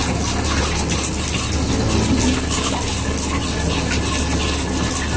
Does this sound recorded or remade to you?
recorded